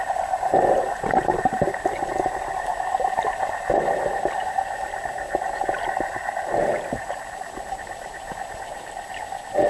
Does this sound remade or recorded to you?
recorded